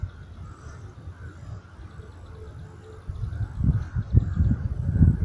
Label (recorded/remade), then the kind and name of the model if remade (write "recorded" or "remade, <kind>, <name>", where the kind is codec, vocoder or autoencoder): recorded